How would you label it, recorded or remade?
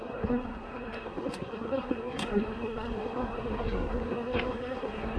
remade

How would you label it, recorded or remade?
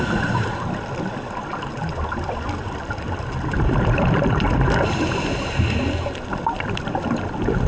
remade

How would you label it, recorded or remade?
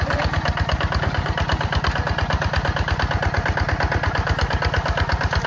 recorded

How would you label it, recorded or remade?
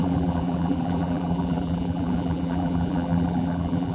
remade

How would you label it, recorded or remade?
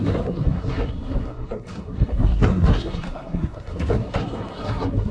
remade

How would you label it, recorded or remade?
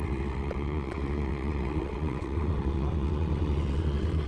remade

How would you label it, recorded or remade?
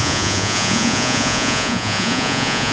remade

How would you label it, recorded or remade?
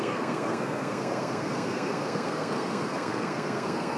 remade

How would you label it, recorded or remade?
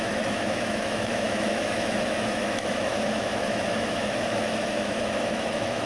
remade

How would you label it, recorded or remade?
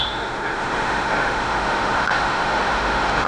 remade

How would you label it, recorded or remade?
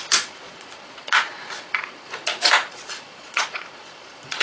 remade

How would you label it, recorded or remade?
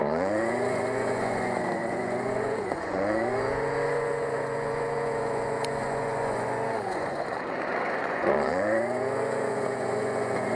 remade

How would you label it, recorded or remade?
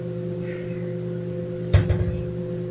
recorded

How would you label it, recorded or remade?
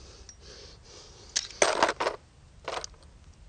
recorded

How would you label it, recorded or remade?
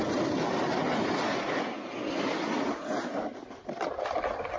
recorded